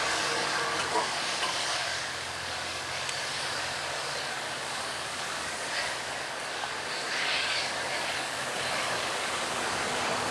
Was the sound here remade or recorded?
remade